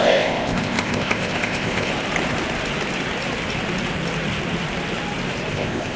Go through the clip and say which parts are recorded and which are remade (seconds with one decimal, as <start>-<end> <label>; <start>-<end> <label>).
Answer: 0.0-1.9 remade; 1.9-5.5 recorded; 5.5-6.0 remade